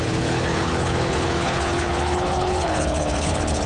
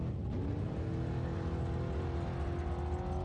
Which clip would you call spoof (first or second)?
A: first